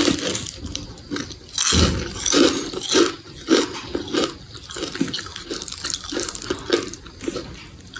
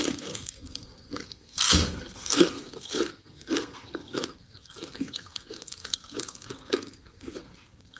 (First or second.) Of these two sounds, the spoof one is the second